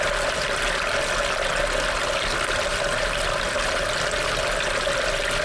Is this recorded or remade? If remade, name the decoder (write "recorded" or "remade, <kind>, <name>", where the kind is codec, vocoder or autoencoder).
recorded